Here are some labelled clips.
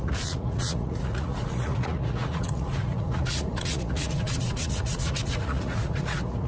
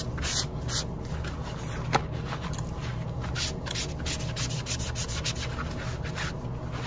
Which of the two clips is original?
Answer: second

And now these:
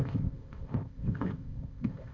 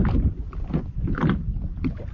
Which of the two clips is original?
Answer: second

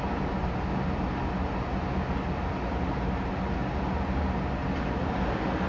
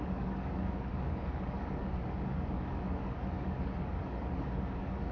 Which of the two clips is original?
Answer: first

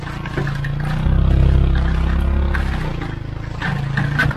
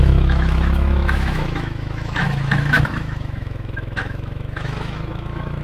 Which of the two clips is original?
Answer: first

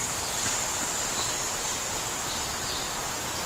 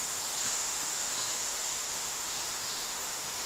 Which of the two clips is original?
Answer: first